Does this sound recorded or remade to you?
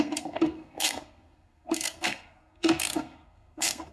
remade